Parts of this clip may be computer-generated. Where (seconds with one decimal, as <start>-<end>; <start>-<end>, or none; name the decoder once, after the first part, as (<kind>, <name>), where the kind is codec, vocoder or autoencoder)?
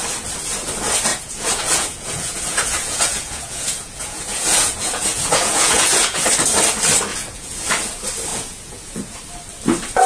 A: 1.1-6.2 (vocoder, Vocos); 7.1-7.7; 8.3-9.2